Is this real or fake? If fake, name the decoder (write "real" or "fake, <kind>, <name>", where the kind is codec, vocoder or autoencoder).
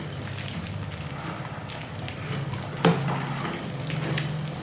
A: real